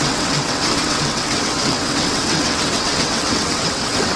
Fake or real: fake